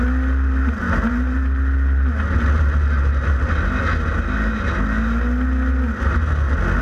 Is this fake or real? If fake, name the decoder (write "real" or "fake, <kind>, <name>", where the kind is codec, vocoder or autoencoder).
real